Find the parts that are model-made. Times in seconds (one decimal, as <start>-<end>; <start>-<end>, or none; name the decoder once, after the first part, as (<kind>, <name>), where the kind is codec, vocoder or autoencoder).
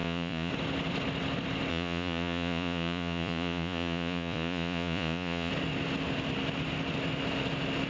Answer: 0.0-0.5 (vocoder, Vocos); 1.7-5.5